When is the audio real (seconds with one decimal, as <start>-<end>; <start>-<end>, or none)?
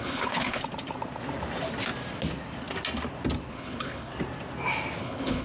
0.6-3.5; 4.1-5.0